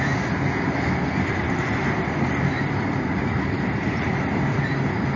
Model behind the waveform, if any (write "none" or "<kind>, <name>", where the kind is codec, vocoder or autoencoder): none